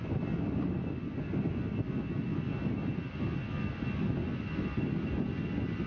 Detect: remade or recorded recorded